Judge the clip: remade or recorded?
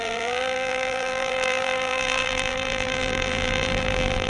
remade